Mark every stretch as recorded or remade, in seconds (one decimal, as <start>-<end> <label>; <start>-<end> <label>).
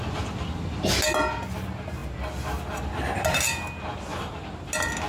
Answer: 0.0-5.1 recorded